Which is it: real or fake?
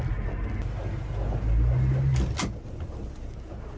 real